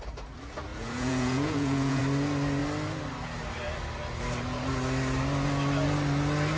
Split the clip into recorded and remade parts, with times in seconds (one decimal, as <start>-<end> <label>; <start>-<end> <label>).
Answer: 0.0-0.7 recorded; 0.7-2.0 remade; 2.0-6.6 recorded